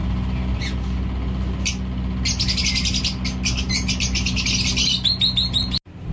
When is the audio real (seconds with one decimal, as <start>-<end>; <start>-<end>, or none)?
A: 0.0-6.1